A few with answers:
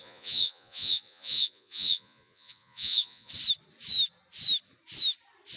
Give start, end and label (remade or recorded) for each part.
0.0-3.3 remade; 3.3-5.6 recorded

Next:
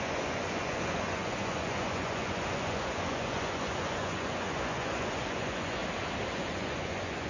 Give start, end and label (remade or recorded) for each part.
0.0-5.8 remade; 5.8-6.3 recorded; 6.3-7.3 remade